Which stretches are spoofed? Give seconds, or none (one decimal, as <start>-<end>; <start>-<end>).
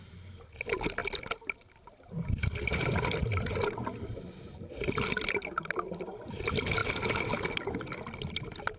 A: none